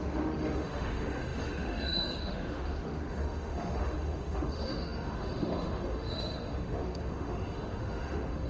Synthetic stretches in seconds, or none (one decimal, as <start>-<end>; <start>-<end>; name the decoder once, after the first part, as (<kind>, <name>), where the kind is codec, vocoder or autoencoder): 0.0-8.5 (autoencoder, DAC-VAE)